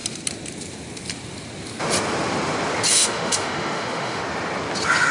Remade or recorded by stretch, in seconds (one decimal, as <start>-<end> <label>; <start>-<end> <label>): 0.0-2.9 recorded; 2.9-4.2 remade; 4.2-5.1 recorded